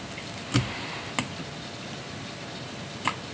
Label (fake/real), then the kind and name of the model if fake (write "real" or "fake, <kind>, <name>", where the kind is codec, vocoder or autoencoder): real